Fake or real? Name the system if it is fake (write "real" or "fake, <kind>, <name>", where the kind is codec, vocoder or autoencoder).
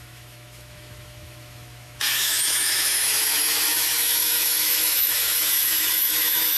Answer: fake, autoencoder, DAC-VAE